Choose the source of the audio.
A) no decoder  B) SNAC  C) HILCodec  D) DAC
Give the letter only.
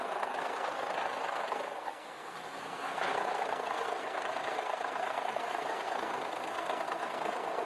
B